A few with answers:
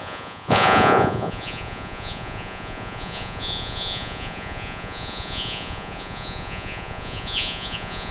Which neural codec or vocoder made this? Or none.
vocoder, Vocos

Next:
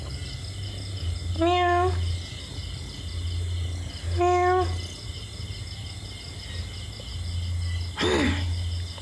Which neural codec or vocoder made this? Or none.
none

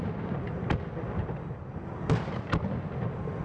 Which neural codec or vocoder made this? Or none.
none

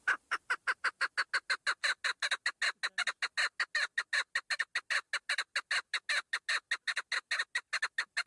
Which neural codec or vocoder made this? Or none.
none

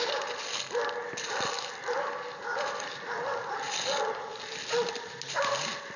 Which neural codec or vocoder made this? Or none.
none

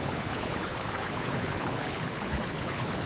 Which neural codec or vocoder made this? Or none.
codec, HILCodec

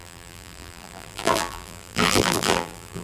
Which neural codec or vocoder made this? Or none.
vocoder, BigVGAN v2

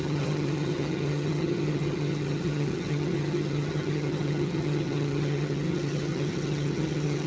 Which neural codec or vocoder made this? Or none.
vocoder, HiFi-GAN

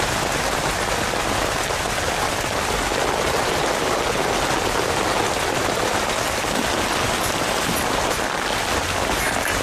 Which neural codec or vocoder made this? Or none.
none